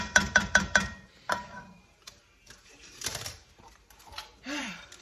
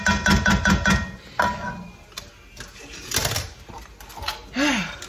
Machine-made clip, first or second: first